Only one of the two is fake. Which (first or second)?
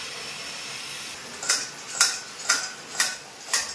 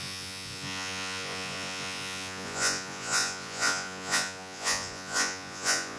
second